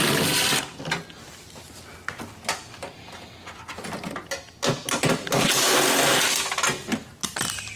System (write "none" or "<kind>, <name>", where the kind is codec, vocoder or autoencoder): none